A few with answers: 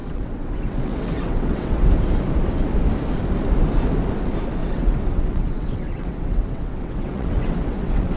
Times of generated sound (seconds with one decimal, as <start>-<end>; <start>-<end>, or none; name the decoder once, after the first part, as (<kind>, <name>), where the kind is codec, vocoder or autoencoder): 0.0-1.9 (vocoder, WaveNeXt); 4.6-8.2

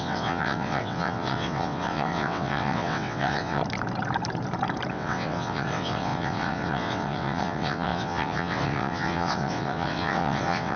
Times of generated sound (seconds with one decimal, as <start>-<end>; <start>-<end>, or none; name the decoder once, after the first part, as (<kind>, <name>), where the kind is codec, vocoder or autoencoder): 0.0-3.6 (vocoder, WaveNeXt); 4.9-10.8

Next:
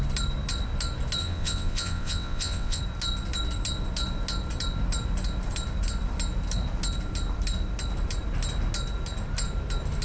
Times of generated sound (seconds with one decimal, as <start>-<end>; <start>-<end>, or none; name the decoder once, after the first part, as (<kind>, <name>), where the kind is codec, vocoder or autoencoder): 1.2-2.8 (vocoder, WaveNeXt)

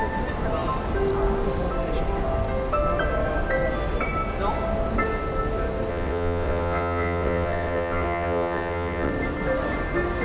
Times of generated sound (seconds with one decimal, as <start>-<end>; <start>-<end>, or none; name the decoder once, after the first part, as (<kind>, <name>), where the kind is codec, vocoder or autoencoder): 5.9-9.1 (vocoder, WaveNeXt)